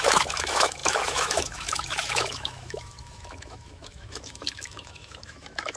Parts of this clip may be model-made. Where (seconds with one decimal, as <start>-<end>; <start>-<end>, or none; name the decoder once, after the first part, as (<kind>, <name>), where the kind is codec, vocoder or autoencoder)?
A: 0.0-5.8 (autoencoder, DAC-VAE)